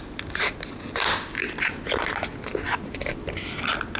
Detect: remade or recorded recorded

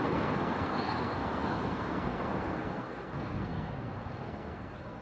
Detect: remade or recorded remade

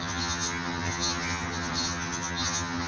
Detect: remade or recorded remade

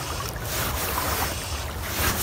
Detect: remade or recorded recorded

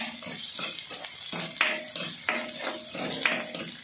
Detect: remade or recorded recorded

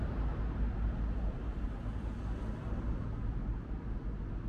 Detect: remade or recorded recorded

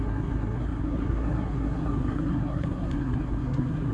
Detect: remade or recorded remade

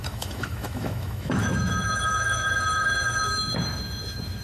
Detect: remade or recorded remade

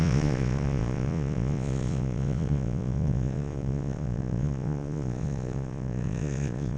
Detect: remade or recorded remade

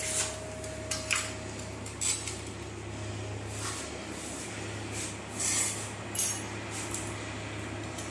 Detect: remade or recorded recorded